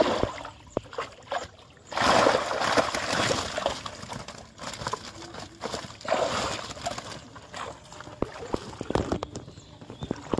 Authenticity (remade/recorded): recorded